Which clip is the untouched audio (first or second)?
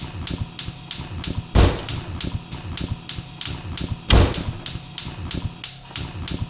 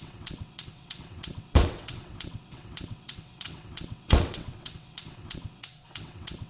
first